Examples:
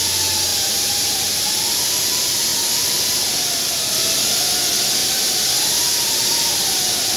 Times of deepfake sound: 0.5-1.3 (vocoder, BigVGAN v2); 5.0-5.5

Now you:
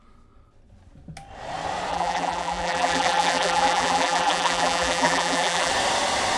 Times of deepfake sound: 1.9-5.7 (vocoder, BigVGAN v2)

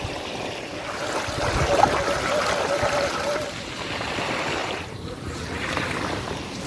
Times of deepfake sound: 4.6-5.7 (vocoder, BigVGAN v2)